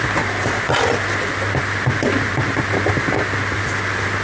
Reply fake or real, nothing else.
real